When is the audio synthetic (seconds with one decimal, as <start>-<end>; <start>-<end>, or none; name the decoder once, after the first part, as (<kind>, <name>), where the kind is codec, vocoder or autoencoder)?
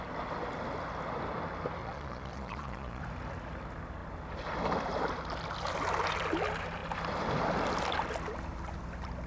1.8-3.0 (vocoder, Vocos)